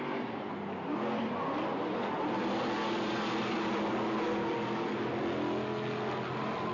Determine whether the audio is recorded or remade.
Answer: recorded